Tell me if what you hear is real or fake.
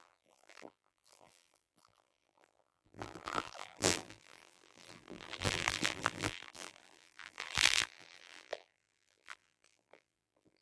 fake